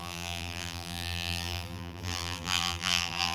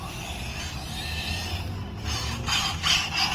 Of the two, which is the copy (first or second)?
first